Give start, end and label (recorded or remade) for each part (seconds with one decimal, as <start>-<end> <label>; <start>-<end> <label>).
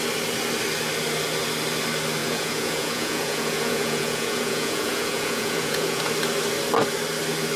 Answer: 0.0-2.2 recorded; 2.2-6.0 remade; 6.0-7.6 recorded